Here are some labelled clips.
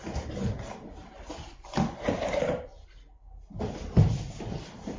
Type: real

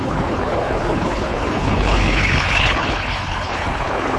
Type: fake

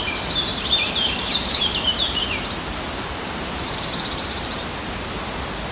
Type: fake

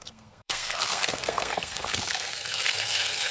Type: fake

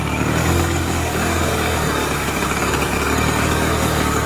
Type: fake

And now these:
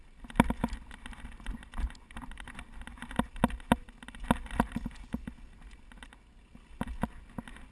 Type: real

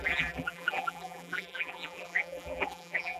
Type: fake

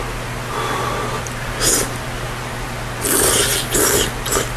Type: real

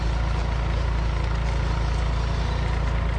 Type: real